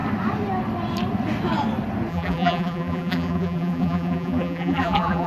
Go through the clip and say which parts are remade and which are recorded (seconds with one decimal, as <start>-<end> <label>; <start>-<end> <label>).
0.0-2.1 recorded; 2.1-5.3 remade